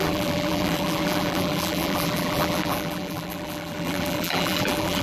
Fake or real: fake